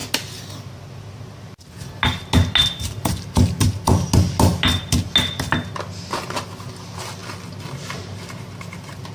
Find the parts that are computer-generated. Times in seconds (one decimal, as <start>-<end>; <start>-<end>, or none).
none